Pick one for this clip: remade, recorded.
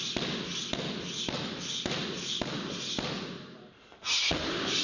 recorded